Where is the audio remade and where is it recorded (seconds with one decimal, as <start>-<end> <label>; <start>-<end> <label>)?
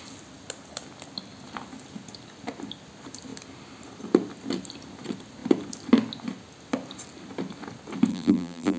0.0-8.1 recorded; 8.1-8.8 remade